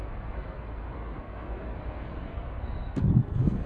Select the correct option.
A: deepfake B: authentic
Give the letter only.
A